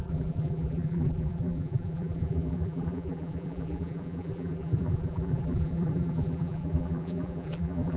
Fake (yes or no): yes